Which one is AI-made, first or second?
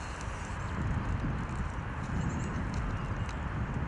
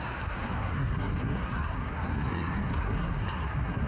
second